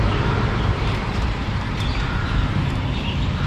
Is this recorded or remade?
remade